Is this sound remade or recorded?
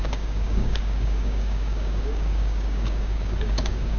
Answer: remade